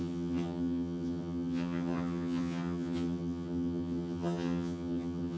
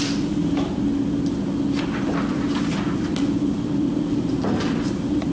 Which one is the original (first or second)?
second